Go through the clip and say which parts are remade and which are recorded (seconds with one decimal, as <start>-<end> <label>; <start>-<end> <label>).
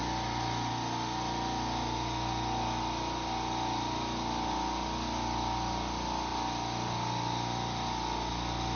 0.0-8.8 recorded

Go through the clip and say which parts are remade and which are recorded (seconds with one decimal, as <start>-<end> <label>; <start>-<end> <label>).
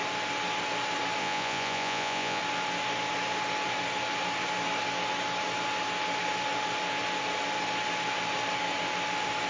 0.0-1.2 recorded; 1.2-2.4 remade; 2.4-9.5 recorded